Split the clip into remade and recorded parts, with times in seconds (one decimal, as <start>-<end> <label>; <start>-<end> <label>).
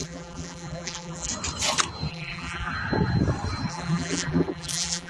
0.0-1.3 remade; 1.3-2.1 recorded; 2.1-2.7 remade; 2.7-3.7 recorded; 3.7-5.1 remade